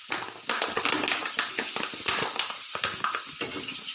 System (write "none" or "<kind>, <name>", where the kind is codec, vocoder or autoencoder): none